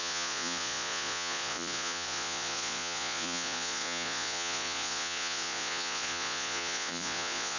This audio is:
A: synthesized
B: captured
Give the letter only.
A